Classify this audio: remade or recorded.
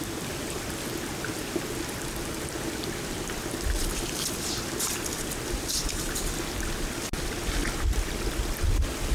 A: recorded